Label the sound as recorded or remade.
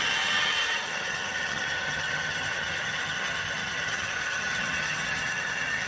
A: remade